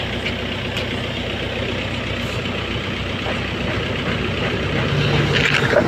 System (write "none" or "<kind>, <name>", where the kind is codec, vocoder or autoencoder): none